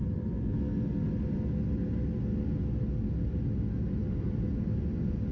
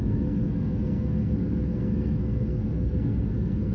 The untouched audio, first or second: first